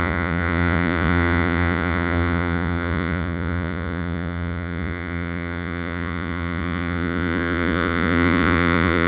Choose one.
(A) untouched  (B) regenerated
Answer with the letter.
B